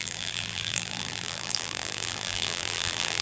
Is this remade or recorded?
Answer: remade